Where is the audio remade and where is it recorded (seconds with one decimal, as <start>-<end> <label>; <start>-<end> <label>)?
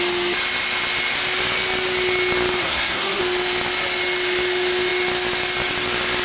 0.0-2.6 recorded; 2.6-3.2 remade; 3.2-6.2 recorded